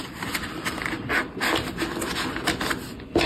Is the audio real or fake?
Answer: real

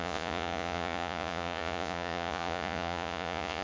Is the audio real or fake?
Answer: fake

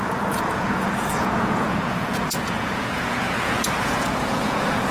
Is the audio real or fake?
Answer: fake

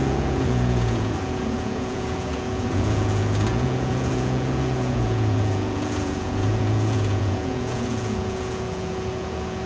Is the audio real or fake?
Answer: fake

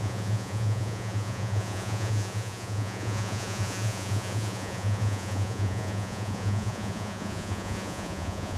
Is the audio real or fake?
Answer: fake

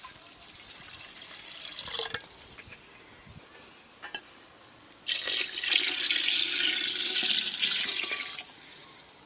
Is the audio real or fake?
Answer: real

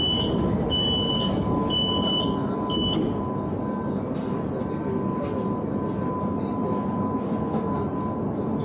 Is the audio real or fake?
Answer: real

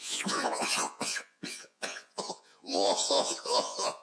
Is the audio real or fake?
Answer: fake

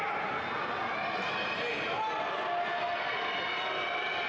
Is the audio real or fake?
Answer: real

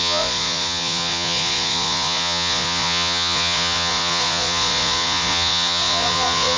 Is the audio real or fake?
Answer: fake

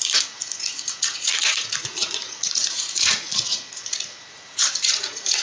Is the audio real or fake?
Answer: fake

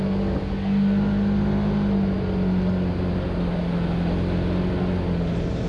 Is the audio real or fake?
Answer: real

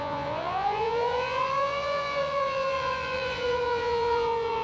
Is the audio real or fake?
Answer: fake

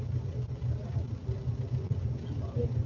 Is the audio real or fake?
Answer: real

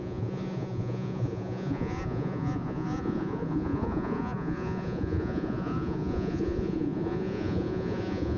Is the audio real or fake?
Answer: fake